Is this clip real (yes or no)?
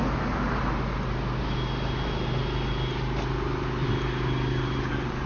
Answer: yes